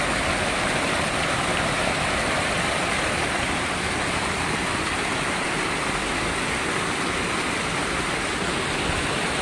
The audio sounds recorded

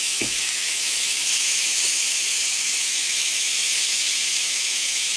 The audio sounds remade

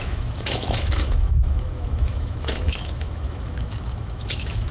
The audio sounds remade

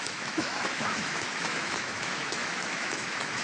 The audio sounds remade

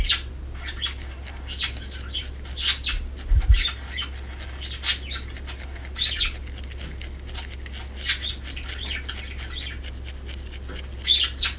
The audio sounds recorded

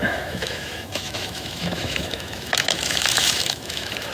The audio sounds remade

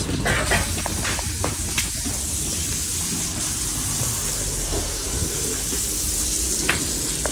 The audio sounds recorded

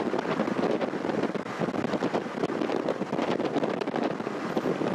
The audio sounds recorded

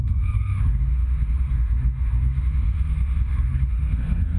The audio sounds remade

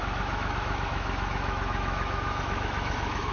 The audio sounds remade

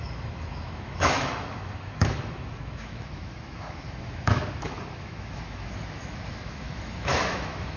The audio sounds remade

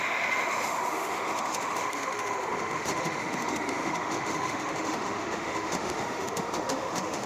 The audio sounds remade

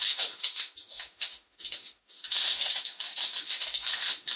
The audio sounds remade